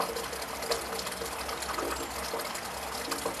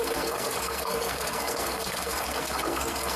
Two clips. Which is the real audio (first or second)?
first